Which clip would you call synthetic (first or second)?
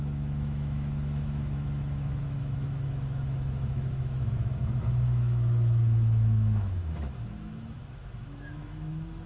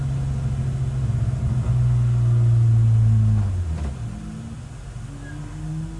first